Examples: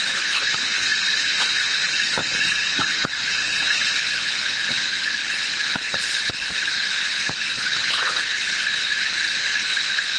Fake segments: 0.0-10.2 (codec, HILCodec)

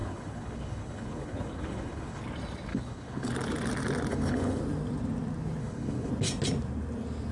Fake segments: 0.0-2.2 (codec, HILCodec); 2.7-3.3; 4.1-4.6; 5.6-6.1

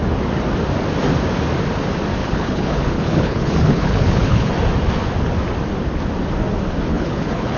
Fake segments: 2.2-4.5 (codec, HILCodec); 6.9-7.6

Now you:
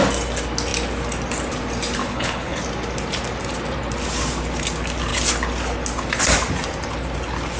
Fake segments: 2.0-2.6 (codec, HILCodec)

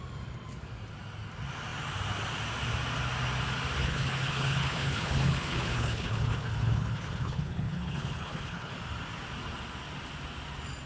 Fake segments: 3.8-8.7 (codec, HILCodec)

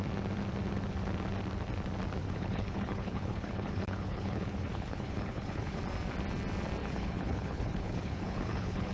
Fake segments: 2.2-5.8 (codec, HILCodec); 6.8-8.9